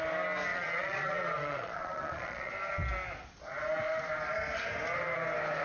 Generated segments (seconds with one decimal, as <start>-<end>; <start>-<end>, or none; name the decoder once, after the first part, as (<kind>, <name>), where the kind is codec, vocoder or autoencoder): 0.5-2.5 (vocoder, Vocos)